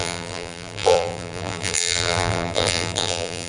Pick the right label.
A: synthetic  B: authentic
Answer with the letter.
A